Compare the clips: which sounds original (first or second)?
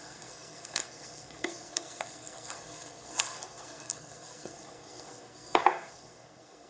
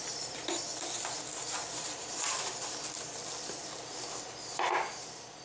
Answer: second